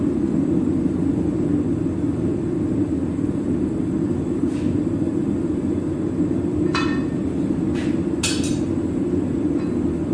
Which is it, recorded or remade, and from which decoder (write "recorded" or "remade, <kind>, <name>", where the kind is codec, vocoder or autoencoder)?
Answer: recorded